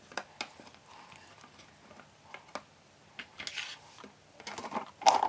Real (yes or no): yes